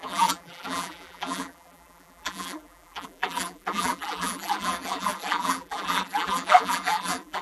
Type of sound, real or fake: fake